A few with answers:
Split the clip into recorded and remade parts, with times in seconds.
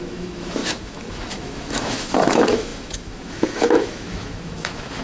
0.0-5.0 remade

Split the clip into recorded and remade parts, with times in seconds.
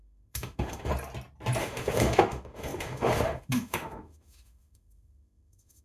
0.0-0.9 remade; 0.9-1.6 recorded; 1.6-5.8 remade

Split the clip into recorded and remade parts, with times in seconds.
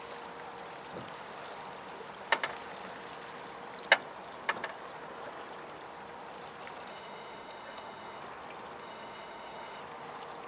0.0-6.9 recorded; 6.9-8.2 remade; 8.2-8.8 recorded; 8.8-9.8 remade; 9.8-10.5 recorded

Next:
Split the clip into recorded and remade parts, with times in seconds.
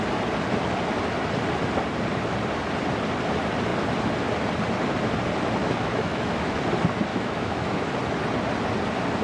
0.0-5.6 recorded; 5.6-6.6 remade; 6.6-7.1 recorded; 7.1-7.9 remade; 7.9-9.2 recorded